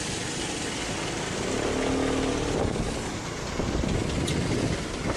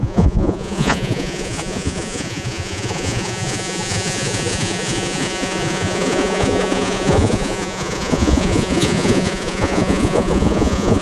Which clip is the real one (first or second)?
first